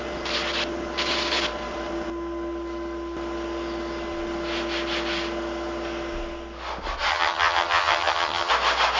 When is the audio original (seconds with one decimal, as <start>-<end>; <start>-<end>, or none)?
0.0-7.1; 8.5-9.0